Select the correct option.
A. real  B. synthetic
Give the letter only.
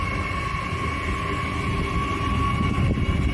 A